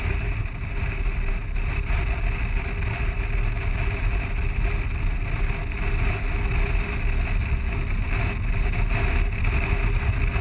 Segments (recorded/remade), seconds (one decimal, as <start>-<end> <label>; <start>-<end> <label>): 0.0-10.4 recorded